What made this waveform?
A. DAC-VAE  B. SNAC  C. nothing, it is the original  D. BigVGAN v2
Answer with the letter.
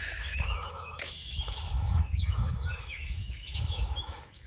A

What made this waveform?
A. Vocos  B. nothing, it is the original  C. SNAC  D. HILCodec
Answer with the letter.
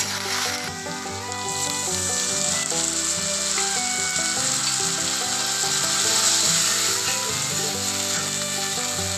B